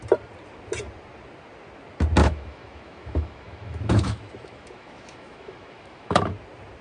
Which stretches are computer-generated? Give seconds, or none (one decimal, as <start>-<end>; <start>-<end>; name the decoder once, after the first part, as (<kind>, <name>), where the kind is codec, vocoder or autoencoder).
2.2-6.3 (autoencoder, DAC-VAE)